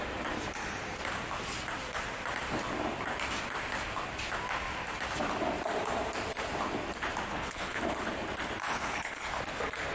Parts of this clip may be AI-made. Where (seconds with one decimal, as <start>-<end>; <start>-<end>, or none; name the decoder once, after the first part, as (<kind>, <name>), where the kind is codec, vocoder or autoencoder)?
7.3-7.8 (codec, HILCodec); 8.6-9.3